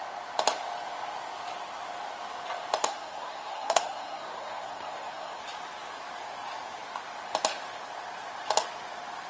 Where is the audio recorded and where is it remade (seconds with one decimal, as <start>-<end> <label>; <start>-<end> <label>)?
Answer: 0.0-2.8 recorded; 2.8-5.4 remade; 5.4-9.3 recorded